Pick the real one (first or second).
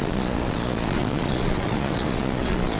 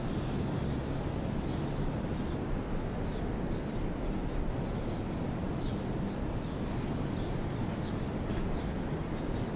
second